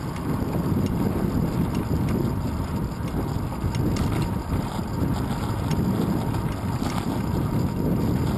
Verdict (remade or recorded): recorded